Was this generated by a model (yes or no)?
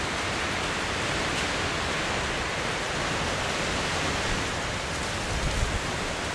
no